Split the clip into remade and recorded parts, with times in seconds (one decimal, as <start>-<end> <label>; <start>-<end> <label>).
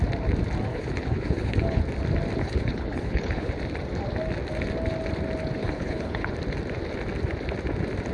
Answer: 0.0-0.7 recorded; 0.7-1.8 remade; 1.8-2.4 recorded; 2.4-3.5 remade; 3.5-5.6 recorded; 5.6-6.3 remade; 6.3-8.1 recorded